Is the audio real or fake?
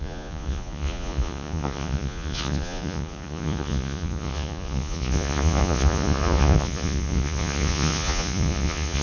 fake